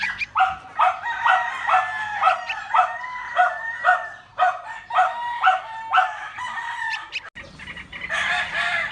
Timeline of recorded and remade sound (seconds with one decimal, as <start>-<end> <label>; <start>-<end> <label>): 0.0-8.9 recorded